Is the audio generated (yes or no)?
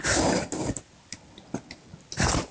no